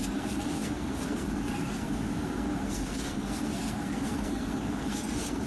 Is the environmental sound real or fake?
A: fake